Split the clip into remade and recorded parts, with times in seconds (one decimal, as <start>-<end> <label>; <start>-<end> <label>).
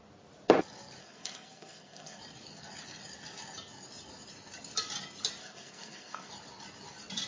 0.0-1.0 recorded; 1.0-2.2 remade; 2.2-5.4 recorded; 5.4-6.3 remade; 6.3-7.3 recorded